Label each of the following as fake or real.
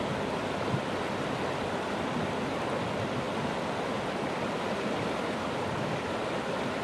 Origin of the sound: real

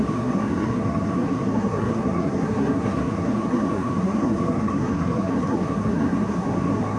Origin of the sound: fake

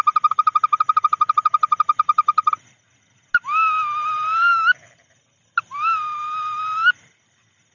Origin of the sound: real